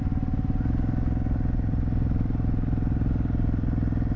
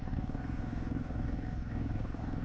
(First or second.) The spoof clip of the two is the second